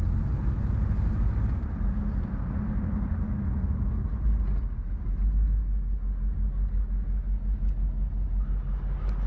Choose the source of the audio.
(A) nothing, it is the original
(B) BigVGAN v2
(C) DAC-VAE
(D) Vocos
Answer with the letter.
A